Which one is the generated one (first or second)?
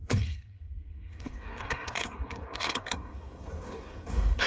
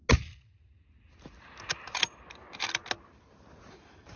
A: first